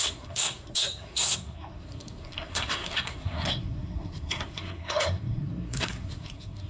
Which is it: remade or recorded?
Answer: remade